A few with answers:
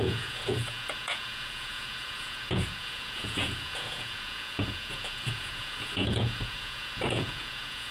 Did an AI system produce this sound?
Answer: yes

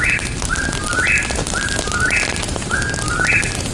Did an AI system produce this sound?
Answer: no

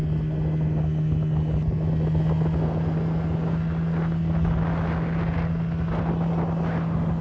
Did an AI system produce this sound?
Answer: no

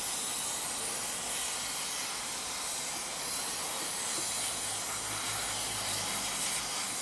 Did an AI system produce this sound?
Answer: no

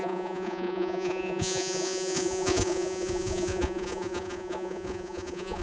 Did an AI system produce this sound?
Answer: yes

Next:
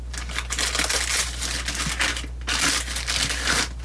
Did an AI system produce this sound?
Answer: no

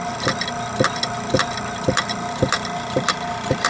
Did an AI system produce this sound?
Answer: no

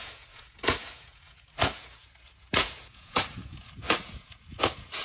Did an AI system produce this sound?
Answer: yes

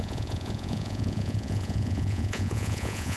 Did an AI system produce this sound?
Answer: yes